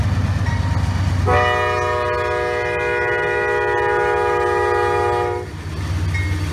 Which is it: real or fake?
real